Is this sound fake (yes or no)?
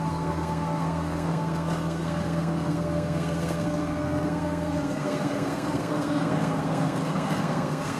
yes